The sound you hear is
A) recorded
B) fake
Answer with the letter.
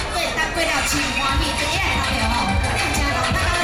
A